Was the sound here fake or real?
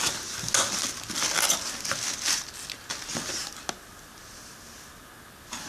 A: real